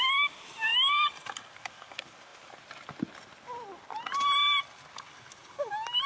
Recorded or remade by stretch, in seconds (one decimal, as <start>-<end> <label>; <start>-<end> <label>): 0.0-6.1 recorded